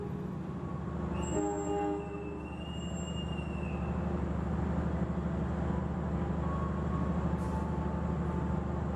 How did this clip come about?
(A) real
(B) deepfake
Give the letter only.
A